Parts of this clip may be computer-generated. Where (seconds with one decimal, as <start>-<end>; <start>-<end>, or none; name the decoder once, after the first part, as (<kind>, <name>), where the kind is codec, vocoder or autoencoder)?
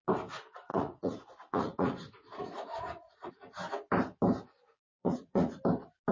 0.7-3.3 (vocoder, Vocos); 5.0-5.6